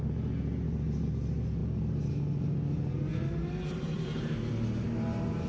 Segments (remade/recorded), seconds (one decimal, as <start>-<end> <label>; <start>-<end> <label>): 0.0-3.1 recorded; 3.1-4.4 remade; 4.4-5.5 recorded